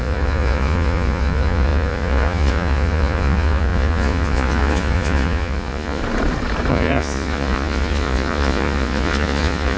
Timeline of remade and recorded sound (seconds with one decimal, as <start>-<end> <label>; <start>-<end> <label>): 0.0-6.0 remade; 6.0-6.7 recorded; 6.7-9.8 remade